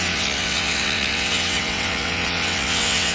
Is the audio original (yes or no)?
no